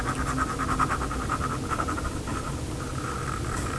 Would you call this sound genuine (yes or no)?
yes